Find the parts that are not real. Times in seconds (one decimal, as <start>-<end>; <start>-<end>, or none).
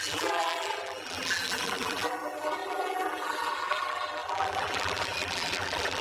0.0-6.0